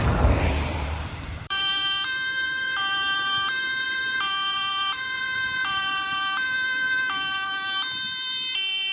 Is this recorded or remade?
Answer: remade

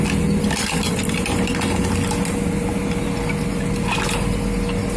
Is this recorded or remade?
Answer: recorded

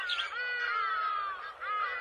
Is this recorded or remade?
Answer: remade